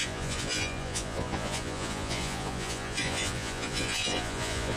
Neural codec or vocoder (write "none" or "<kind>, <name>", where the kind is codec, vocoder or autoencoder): vocoder, Vocos